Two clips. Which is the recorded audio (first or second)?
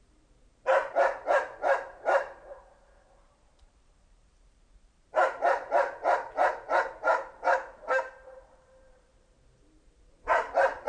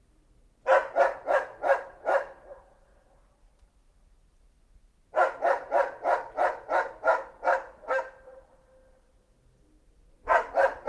second